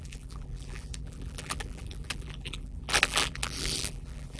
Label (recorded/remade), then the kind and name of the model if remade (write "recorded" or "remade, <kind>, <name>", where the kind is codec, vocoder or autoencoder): remade, vocoder, BigVGAN v2